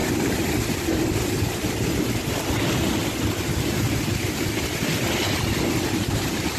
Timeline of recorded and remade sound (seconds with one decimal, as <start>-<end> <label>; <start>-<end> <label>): 0.0-6.6 recorded